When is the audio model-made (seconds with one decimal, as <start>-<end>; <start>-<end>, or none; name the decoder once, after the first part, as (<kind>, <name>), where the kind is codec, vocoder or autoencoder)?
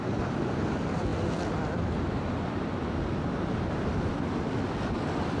none